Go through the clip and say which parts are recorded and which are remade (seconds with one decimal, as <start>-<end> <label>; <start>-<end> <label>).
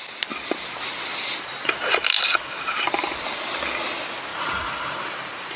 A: 0.0-4.3 recorded; 4.3-5.0 remade; 5.0-5.6 recorded